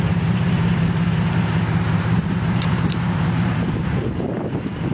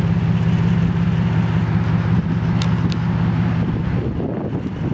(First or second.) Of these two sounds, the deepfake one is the first